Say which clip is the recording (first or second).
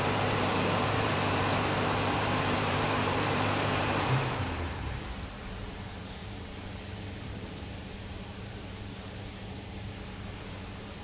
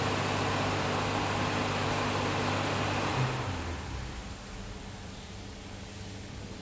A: second